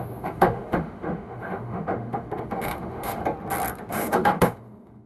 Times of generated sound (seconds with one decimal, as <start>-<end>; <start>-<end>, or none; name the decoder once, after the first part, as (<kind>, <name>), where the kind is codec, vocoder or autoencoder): 0.0-3.2 (autoencoder, DAC-VAE); 3.9-5.1